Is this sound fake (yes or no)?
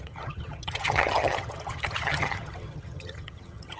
yes